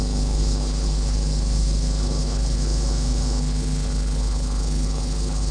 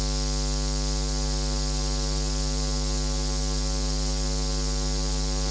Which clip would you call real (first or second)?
second